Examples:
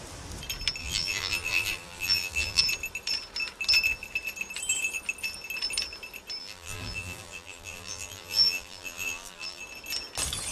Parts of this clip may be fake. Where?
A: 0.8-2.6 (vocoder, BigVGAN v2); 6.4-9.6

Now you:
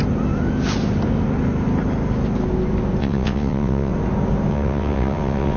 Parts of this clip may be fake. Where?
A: 3.0-3.9 (vocoder, WaveNeXt); 4.5-5.6

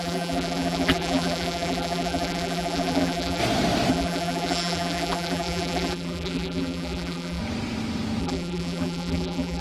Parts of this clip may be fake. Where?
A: 0.0-3.4 (vocoder, BigVGAN v2); 3.9-7.4; 8.2-9.6

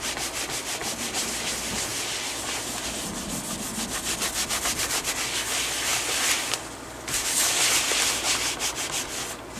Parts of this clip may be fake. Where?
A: 0.8-1.5 (vocoder, BigVGAN v2); 1.9-5.1; 5.9-7.3

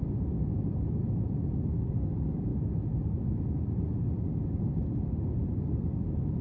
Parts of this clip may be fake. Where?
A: none

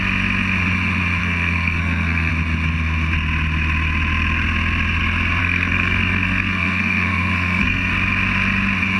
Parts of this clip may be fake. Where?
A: 1.2-2.3 (codec, SNAC); 5.4-7.9